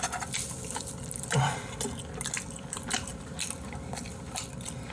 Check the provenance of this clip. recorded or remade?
remade